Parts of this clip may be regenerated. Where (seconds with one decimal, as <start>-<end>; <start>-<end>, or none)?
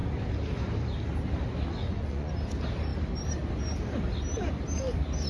1.8-2.3